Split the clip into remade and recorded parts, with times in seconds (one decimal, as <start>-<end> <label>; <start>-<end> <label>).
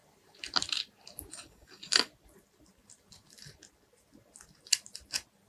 0.0-1.3 recorded; 1.3-2.1 remade; 2.1-5.5 recorded